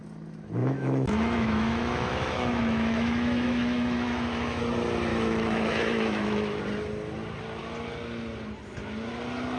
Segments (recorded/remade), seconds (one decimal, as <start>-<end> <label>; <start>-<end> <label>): 0.0-0.6 recorded; 0.6-4.6 remade; 4.6-5.1 recorded; 5.1-6.6 remade; 6.6-9.6 recorded